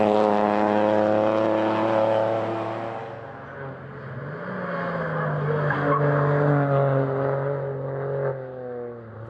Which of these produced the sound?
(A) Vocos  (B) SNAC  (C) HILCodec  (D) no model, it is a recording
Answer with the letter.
D